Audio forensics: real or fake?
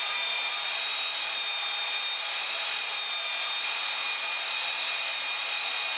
real